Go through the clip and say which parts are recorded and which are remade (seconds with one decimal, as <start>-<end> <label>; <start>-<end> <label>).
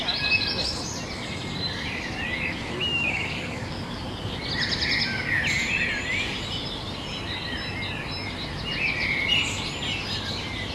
0.0-2.5 recorded; 2.5-4.4 remade; 4.4-10.7 recorded